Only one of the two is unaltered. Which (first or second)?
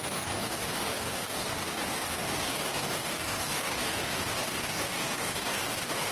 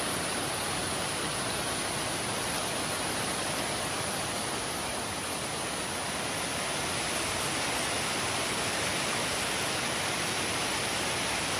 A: second